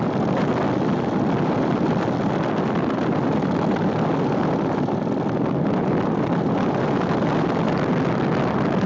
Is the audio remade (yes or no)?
no